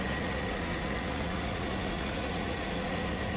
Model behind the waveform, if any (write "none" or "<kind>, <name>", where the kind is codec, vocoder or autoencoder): vocoder, Vocos